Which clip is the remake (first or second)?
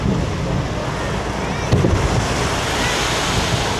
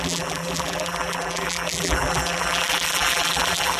second